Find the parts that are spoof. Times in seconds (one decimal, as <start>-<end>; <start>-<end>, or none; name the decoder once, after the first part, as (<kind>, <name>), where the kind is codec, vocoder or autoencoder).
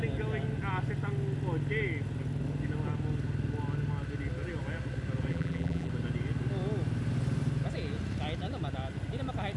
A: 5.3-5.9 (vocoder, BigVGAN v2)